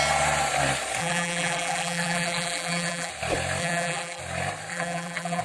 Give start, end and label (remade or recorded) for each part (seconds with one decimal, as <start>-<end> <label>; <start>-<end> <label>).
0.0-1.0 recorded; 1.0-3.1 remade; 3.1-3.6 recorded; 3.6-4.2 remade; 4.2-4.7 recorded; 4.7-5.4 remade

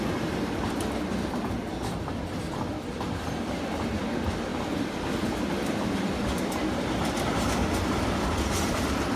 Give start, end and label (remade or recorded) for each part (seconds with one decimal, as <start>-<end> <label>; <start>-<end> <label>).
0.0-9.2 recorded

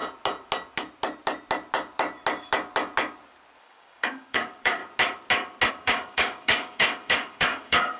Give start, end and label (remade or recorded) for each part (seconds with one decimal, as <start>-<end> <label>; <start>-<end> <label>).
0.0-3.6 recorded; 3.6-4.8 remade; 4.8-5.7 recorded; 5.7-8.0 remade

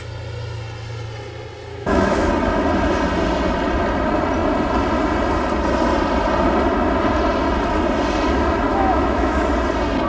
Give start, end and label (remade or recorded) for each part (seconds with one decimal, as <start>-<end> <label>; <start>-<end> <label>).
0.0-1.7 recorded; 1.7-2.3 remade; 2.3-8.7 recorded; 8.7-9.5 remade; 9.5-10.1 recorded